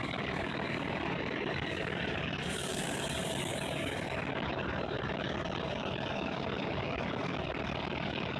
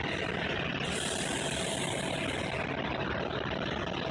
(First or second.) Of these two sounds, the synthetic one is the first